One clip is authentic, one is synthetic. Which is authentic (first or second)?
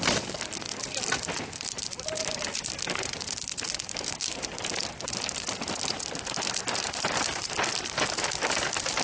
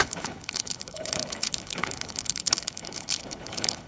first